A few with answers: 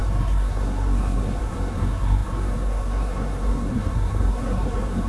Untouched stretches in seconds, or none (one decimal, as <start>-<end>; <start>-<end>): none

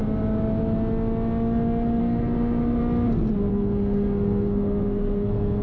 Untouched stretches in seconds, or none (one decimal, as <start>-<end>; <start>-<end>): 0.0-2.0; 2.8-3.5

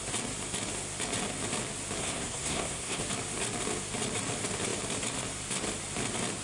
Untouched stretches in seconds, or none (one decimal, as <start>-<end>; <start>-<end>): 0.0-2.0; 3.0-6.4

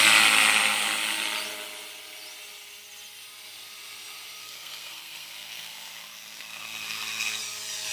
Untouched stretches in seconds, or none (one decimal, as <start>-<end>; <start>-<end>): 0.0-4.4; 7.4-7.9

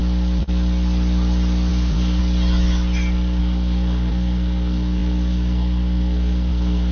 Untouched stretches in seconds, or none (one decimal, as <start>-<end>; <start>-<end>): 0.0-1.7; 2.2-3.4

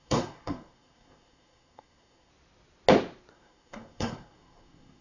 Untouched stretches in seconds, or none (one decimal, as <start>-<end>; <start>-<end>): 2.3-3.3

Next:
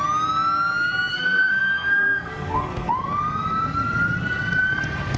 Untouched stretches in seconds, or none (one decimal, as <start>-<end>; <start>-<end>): 0.0-1.1; 2.9-5.2